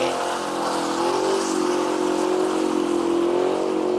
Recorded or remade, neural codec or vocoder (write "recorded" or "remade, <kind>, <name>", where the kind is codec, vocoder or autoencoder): recorded